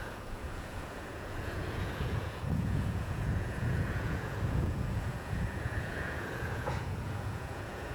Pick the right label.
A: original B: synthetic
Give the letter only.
B